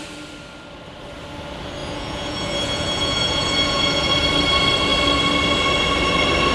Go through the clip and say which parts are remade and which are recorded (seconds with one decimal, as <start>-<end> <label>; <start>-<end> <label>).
0.0-1.8 recorded; 1.8-4.1 remade; 4.1-6.5 recorded